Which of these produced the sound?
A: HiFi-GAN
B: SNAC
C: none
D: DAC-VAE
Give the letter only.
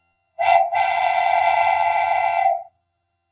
A